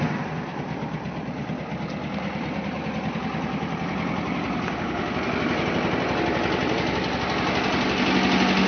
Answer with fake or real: real